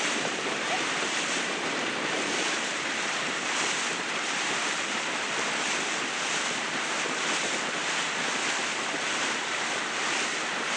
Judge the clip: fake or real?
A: fake